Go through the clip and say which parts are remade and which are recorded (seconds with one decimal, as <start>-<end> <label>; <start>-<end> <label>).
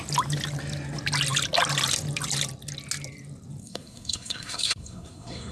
0.0-3.6 recorded; 3.6-5.5 remade